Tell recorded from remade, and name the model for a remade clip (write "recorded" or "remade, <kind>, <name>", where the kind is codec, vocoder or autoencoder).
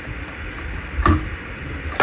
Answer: recorded